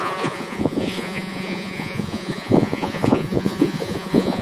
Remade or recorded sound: remade